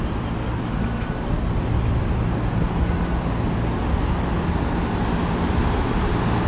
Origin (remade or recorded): recorded